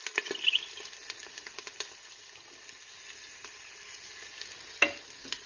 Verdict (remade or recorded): recorded